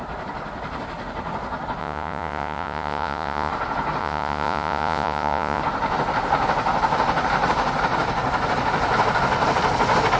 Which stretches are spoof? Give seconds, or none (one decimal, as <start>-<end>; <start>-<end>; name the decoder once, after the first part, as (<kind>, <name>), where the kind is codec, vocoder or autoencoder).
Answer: 1.8-3.5 (vocoder, Vocos); 4.0-5.6